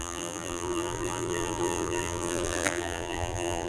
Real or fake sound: fake